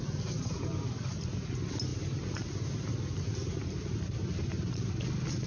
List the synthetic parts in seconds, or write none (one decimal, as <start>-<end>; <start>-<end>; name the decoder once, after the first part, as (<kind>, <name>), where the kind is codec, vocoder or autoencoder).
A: none